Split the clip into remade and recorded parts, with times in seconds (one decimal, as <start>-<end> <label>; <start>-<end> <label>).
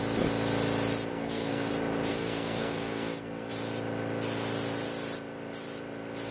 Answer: 0.0-1.1 recorded; 1.1-1.7 remade; 1.7-2.1 recorded; 2.1-3.5 remade; 3.5-6.3 recorded